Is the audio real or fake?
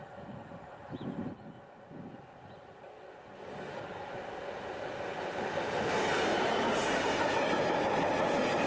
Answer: real